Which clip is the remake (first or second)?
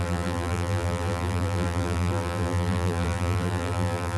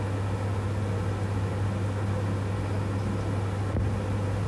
first